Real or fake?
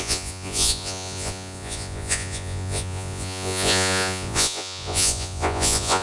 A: fake